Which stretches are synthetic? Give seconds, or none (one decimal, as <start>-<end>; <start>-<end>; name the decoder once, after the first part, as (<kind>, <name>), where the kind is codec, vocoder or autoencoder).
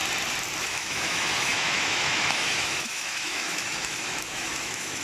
0.6-5.0 (autoencoder, DAC-VAE)